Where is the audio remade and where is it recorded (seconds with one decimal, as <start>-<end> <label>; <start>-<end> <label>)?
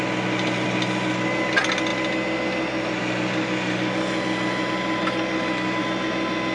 0.0-6.5 recorded